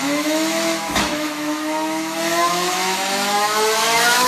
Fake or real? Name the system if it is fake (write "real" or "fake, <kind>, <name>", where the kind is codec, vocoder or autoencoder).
fake, autoencoder, DAC-VAE